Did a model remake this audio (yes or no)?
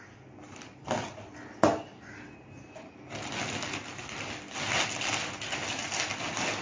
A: no